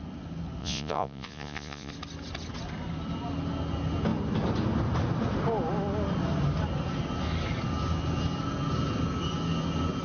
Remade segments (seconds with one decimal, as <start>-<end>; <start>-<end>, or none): 0.6-1.9